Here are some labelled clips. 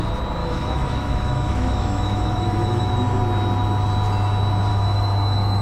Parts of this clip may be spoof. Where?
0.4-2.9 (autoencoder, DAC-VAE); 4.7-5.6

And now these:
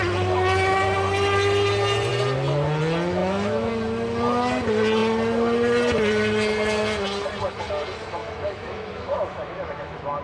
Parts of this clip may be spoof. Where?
3.2-3.7 (autoencoder, DAC-VAE); 8.2-10.2

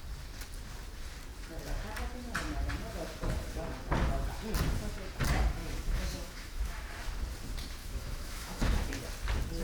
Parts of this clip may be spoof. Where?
5.6-6.9 (autoencoder, DAC-VAE); 7.8-9.0

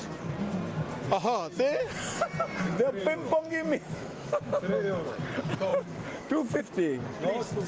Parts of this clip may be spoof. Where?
3.0-5.1 (autoencoder, DAC-VAE); 5.7-6.6

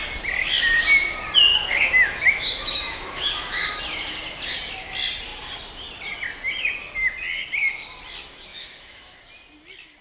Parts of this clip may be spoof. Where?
1.5-3.8 (autoencoder, DAC-VAE); 8.5-9.2